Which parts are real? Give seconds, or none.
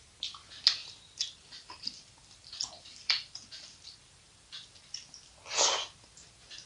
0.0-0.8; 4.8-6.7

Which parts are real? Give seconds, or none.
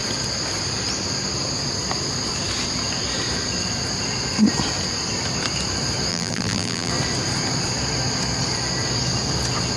0.0-6.1; 6.9-9.8